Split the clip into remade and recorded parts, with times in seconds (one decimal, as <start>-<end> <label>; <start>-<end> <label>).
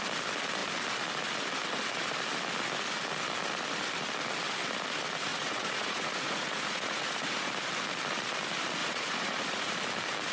0.0-5.3 recorded; 5.3-7.5 remade; 7.5-8.8 recorded; 8.8-9.7 remade; 9.7-10.3 recorded